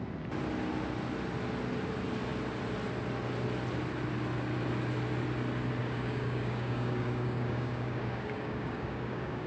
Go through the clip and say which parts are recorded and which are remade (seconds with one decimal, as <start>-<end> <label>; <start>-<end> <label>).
0.0-5.8 recorded; 5.8-9.5 remade